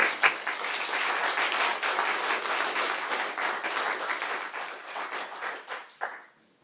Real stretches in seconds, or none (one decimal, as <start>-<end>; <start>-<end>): 0.0-6.6